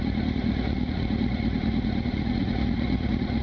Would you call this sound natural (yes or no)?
no